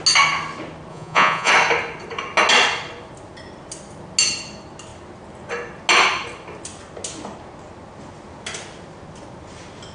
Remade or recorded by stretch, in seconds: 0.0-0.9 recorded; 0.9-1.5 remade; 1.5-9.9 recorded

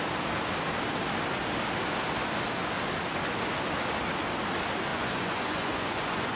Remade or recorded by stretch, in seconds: 0.0-4.9 recorded; 4.9-6.4 remade

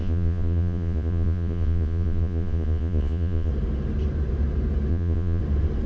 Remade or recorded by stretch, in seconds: 0.0-3.5 remade; 3.5-4.9 recorded; 4.9-5.4 remade; 5.4-5.9 recorded

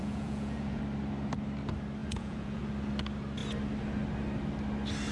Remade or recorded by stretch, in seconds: 0.0-0.8 remade; 0.8-2.0 recorded; 2.0-2.6 remade; 2.6-5.1 recorded

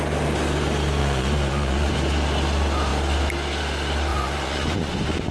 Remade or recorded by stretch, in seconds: 0.0-1.0 recorded; 1.0-1.9 remade; 1.9-4.1 recorded; 4.1-5.3 remade

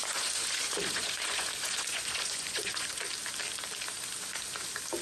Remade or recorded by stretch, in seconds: 0.0-3.0 remade; 3.0-5.0 recorded